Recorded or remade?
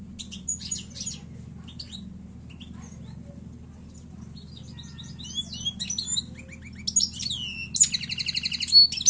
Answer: recorded